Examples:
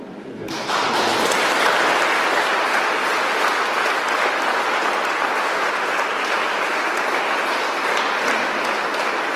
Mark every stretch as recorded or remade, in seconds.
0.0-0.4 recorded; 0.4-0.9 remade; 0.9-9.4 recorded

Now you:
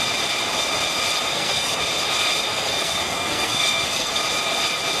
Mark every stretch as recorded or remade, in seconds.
0.0-1.3 recorded; 1.3-1.8 remade; 1.8-2.5 recorded; 2.5-4.2 remade; 4.2-5.0 recorded

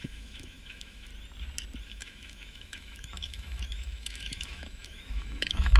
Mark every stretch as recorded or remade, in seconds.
0.0-1.1 remade; 1.1-1.8 recorded; 1.8-5.8 remade